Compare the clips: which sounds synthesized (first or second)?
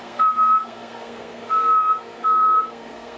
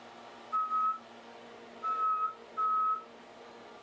first